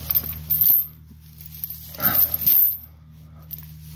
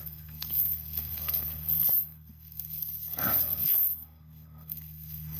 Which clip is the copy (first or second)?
second